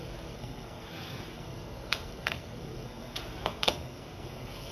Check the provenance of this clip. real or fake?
fake